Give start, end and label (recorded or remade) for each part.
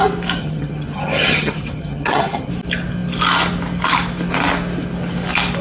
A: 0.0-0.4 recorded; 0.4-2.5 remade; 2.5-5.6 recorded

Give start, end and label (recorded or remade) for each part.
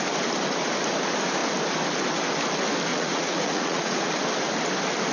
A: 0.0-2.9 recorded; 2.9-4.1 remade; 4.1-5.1 recorded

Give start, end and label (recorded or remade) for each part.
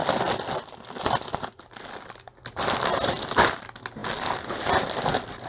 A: 0.0-5.5 recorded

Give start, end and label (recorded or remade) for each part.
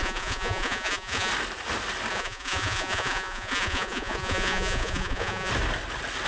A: 0.0-1.3 remade; 1.3-2.1 recorded; 2.1-5.5 remade; 5.5-6.3 recorded